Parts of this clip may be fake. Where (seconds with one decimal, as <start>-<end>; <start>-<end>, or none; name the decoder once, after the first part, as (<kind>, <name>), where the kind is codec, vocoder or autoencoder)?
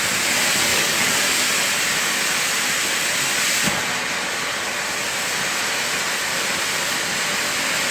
0.7-1.2 (codec, DAC)